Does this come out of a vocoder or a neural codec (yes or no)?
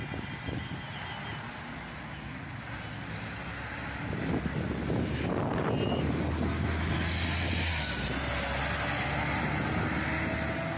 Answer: no